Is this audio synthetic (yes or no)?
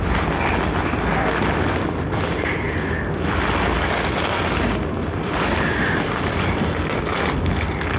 no